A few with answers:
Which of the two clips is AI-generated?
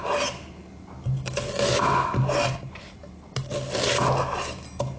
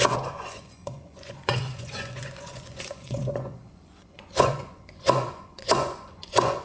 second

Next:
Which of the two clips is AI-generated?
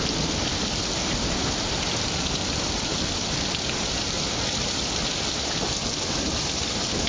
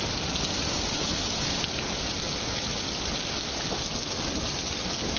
first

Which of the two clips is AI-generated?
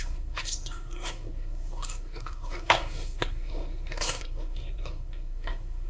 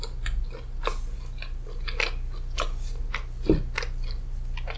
first